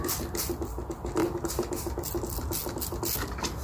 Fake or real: real